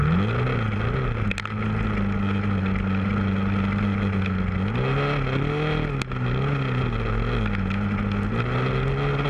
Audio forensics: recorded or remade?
recorded